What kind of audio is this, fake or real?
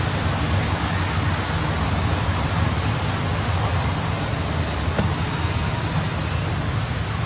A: real